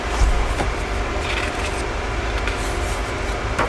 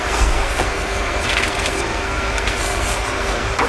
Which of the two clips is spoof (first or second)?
second